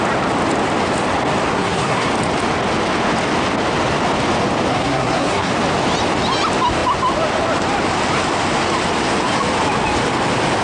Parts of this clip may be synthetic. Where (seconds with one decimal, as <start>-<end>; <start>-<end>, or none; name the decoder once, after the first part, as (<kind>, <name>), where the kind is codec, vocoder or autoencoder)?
1.5-2.1 (codec, SNAC); 4.7-5.5